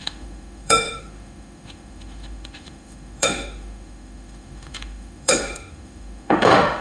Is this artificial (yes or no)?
yes